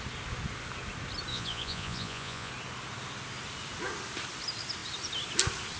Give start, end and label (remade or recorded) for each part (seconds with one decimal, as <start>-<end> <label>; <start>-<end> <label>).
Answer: 0.0-1.3 recorded; 1.3-2.5 remade; 2.5-5.8 recorded